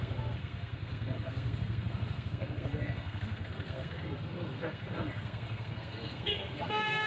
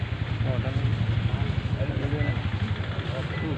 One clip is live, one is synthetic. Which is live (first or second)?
second